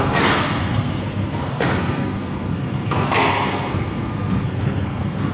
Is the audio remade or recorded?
remade